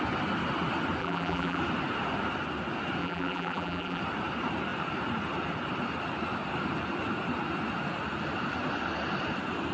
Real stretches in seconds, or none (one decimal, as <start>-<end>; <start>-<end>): 0.0-1.0; 1.6-3.0; 4.0-9.7